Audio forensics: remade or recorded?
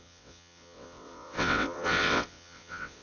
remade